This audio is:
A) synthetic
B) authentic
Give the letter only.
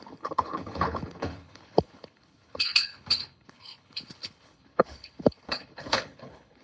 A